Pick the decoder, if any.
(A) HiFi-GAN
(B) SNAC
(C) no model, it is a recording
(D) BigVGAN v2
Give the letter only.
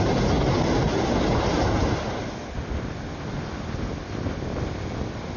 C